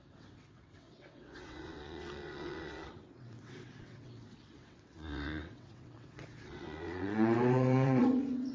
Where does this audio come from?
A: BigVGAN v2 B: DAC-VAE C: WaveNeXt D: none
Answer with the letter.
C